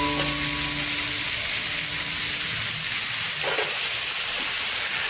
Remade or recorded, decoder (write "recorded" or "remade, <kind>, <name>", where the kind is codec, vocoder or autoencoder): recorded